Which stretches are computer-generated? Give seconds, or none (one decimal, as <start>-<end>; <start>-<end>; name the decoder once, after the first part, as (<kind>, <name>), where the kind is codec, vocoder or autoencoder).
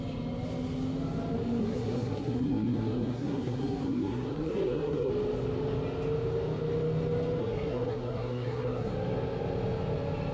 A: 1.6-5.1 (codec, SNAC); 7.4-8.9